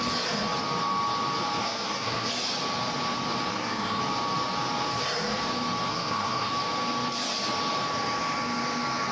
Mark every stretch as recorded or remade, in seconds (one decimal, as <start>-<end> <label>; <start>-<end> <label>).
0.0-1.6 recorded; 1.6-2.3 remade; 2.3-3.5 recorded; 3.5-4.0 remade; 4.0-5.9 recorded; 5.9-6.5 remade; 6.5-9.1 recorded